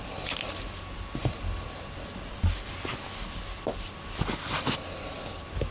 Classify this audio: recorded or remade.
recorded